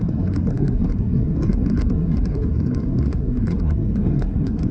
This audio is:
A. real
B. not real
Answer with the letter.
B